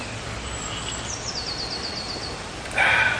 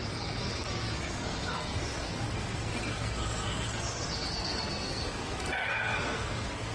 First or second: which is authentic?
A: first